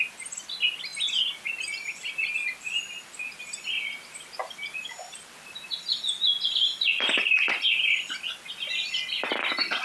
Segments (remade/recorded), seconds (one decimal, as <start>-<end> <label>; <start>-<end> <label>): 0.0-9.8 recorded